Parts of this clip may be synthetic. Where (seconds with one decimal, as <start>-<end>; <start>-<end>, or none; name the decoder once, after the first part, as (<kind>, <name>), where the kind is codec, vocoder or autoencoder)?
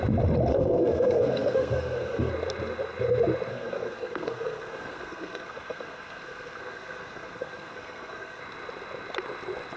0.5-2.3 (codec, SNAC); 3.5-8.4